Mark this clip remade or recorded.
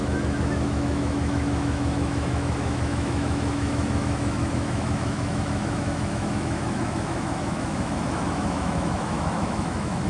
remade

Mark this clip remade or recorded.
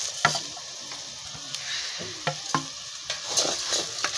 recorded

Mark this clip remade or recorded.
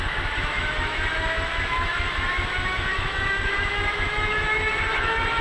remade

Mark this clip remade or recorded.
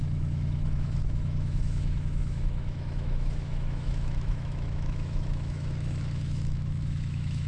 remade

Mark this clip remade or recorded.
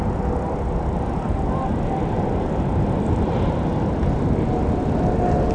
recorded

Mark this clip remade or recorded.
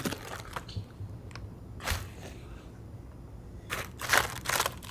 recorded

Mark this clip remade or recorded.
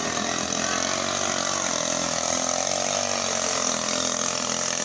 recorded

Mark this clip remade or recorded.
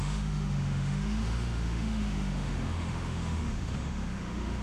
remade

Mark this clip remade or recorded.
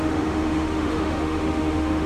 remade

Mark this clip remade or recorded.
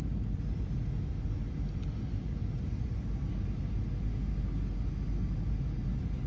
recorded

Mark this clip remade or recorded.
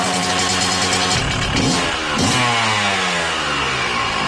recorded